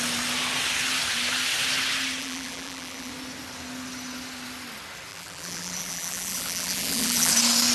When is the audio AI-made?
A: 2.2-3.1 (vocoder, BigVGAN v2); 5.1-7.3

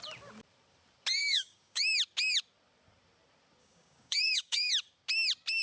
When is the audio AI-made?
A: 1.2-1.8 (codec, DAC); 3.6-4.7